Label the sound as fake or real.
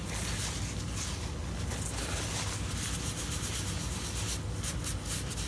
real